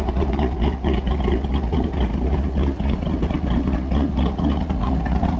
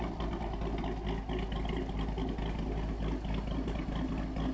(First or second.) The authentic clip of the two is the second